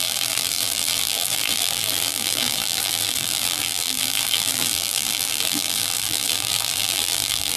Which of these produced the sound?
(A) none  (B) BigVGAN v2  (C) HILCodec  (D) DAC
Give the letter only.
B